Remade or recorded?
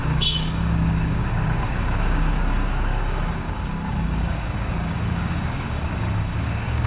remade